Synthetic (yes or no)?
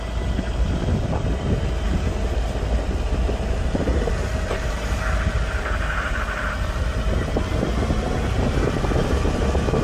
no